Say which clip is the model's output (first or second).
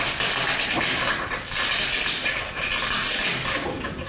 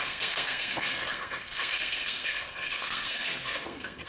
second